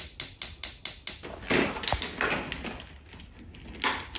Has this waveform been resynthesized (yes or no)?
no